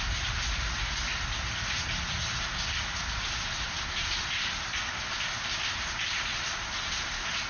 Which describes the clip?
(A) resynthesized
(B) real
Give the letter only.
B